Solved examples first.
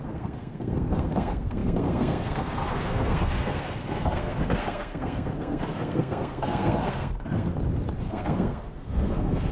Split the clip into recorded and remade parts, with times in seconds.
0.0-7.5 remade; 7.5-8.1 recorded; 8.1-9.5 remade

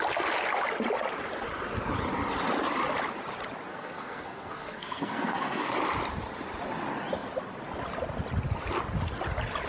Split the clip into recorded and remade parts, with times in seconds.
0.0-3.7 recorded; 3.7-5.7 remade; 5.7-9.7 recorded

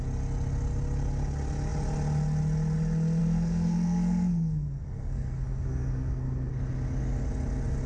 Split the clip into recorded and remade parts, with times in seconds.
0.0-3.2 recorded; 3.2-6.5 remade; 6.5-7.9 recorded

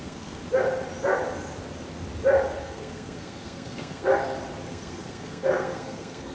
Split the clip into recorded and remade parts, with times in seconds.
0.0-0.4 remade; 0.4-2.6 recorded; 2.6-4.1 remade; 4.1-4.7 recorded; 4.7-6.3 remade

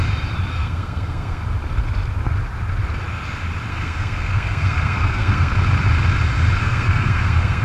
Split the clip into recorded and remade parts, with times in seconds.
0.0-0.5 recorded; 0.5-1.4 remade; 1.4-3.7 recorded; 3.7-5.5 remade; 5.5-6.6 recorded; 6.6-7.6 remade

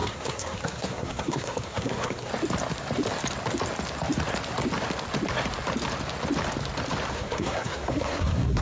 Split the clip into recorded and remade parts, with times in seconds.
0.0-2.3 remade; 2.3-7.1 recorded; 7.1-8.6 remade